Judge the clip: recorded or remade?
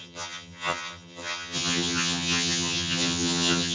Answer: remade